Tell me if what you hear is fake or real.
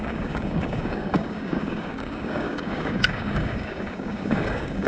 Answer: fake